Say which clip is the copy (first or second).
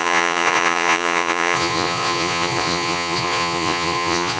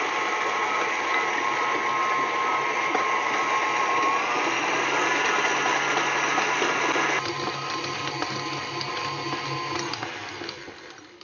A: first